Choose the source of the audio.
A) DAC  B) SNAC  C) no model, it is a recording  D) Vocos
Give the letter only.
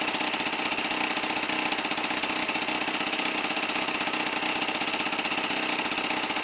C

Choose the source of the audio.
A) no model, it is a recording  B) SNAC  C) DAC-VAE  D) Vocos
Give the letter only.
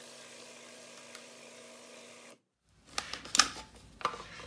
A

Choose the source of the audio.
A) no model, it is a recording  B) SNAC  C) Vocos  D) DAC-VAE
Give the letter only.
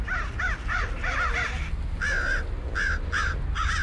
A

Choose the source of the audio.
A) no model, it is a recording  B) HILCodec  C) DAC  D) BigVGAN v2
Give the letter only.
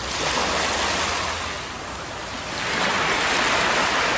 A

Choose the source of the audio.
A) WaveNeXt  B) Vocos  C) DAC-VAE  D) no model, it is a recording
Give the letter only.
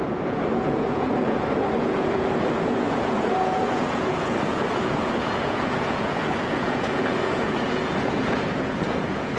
B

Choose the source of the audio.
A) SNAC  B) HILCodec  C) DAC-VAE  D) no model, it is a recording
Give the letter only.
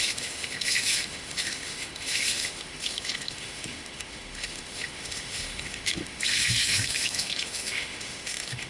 C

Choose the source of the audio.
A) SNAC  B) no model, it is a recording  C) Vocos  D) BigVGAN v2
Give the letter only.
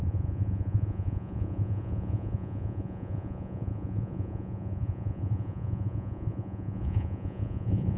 C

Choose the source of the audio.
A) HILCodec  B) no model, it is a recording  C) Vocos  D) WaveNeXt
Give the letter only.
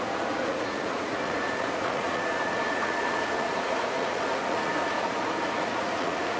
C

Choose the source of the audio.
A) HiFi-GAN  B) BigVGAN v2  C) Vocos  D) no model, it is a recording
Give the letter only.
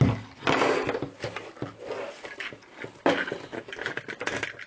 D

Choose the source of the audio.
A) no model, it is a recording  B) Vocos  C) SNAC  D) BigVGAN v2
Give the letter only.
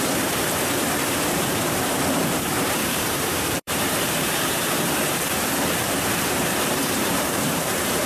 D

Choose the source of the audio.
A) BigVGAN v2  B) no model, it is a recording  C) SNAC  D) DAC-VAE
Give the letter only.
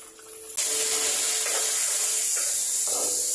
B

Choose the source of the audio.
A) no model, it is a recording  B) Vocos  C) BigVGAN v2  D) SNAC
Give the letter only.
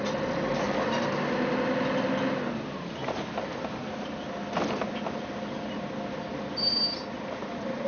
A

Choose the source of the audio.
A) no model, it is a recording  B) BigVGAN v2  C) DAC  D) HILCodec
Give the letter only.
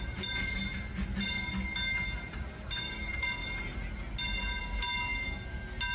A